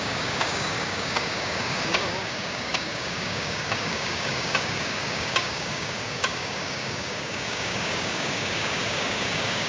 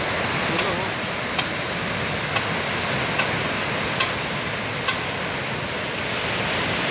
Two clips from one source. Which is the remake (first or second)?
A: first